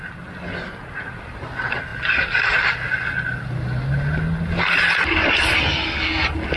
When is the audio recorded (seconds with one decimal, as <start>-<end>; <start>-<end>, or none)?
0.0-6.6